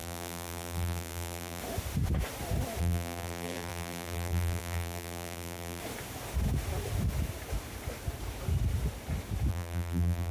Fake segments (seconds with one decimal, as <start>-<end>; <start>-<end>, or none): 0.0-1.6; 2.8-5.8; 9.5-10.3